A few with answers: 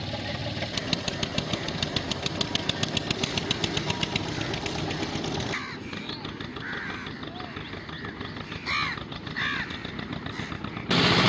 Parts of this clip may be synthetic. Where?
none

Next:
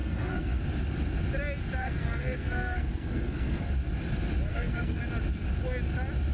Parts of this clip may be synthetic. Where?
0.0-0.6; 1.8-3.7; 4.5-5.0

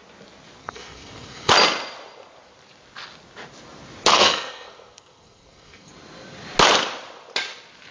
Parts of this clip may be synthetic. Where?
0.6-1.5; 4.1-5.9

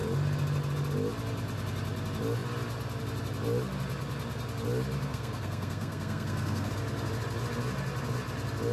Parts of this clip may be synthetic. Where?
5.1-6.7